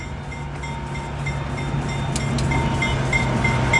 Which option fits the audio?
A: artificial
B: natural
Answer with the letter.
B